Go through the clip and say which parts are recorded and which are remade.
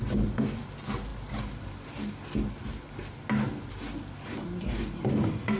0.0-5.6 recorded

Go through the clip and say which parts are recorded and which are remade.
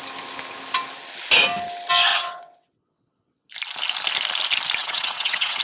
0.0-2.1 recorded; 2.1-3.5 remade; 3.5-4.8 recorded; 4.8-5.6 remade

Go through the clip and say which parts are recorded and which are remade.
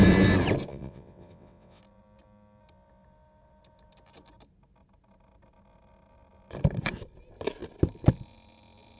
0.0-0.7 recorded; 0.7-1.8 remade; 1.8-9.0 recorded